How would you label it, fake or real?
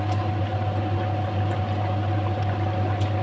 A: real